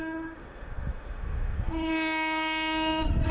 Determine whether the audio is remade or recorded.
remade